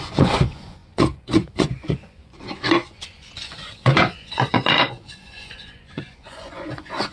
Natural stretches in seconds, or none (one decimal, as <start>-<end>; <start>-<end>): none